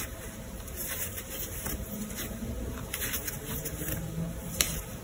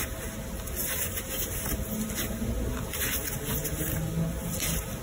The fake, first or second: first